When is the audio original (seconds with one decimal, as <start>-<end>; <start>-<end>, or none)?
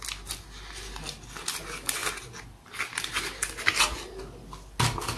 0.0-5.2